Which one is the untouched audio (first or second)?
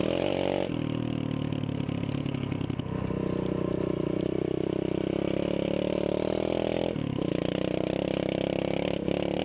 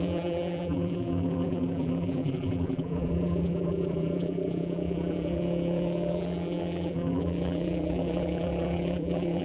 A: first